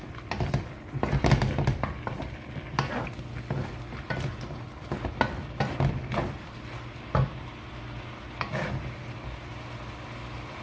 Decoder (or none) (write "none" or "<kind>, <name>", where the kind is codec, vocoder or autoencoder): none